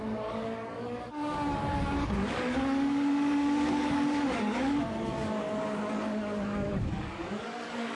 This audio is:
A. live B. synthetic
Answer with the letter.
B